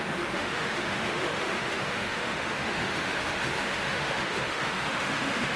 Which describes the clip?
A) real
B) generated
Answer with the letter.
B